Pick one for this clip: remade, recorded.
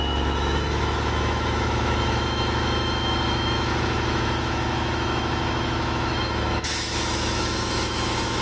remade